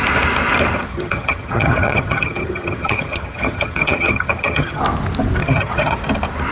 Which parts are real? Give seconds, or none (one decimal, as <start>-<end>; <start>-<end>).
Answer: 0.0-0.9; 4.8-5.4; 6.0-6.5